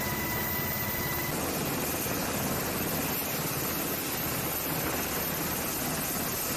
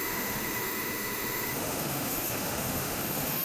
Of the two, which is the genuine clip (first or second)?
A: first